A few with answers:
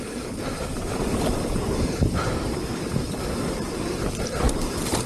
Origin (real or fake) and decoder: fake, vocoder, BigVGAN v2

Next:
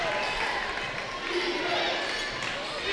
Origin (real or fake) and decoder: real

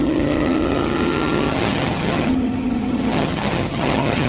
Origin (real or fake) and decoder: fake, vocoder, HiFi-GAN